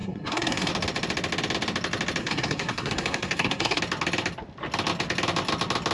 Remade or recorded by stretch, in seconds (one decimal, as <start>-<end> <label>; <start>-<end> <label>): 0.0-0.7 remade; 0.7-2.2 recorded; 2.2-3.8 remade; 3.8-5.9 recorded